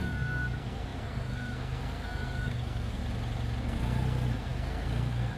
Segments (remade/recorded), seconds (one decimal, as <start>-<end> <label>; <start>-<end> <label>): 0.0-3.0 remade; 3.0-3.6 recorded; 3.6-5.4 remade